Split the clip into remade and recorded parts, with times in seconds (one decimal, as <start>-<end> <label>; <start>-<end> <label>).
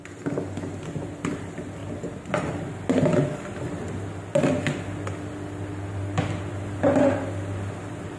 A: 0.0-8.2 recorded